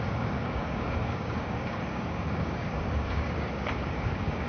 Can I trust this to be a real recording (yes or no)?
no